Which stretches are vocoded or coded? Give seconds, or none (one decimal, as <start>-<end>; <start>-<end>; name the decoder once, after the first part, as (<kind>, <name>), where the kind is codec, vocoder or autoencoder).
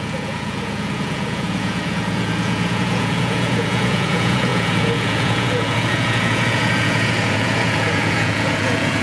0.0-9.0 (vocoder, Vocos)